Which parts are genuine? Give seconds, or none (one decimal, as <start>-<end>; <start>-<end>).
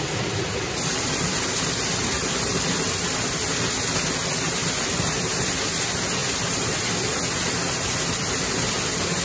0.0-6.2; 8.3-9.2